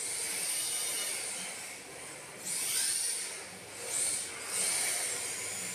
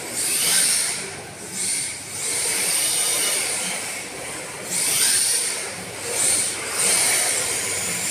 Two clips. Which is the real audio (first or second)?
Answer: first